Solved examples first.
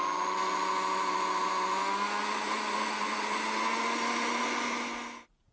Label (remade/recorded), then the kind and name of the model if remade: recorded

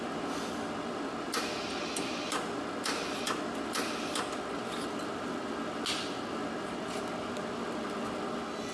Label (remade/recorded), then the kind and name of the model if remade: recorded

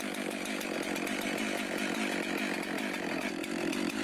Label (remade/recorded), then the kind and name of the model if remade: recorded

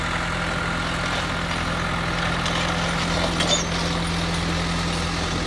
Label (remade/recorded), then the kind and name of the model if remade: recorded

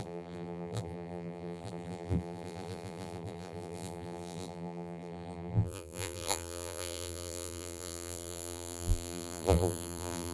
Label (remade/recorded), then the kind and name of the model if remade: remade, vocoder, BigVGAN v2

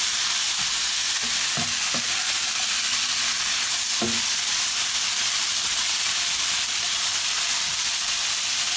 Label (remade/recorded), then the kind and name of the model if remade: recorded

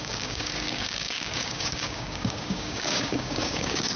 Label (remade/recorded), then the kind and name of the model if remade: remade, codec, DAC